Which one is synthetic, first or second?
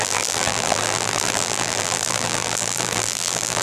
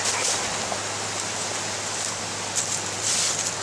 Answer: first